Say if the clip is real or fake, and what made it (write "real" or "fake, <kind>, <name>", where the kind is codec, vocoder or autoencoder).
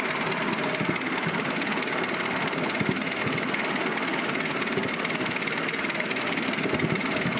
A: real